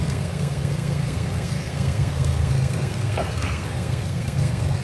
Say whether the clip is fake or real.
fake